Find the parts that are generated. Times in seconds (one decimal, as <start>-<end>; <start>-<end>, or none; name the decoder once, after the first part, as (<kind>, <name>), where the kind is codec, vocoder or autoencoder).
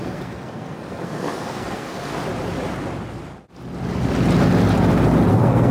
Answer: 0.0-2.1 (codec, SNAC); 5.3-5.7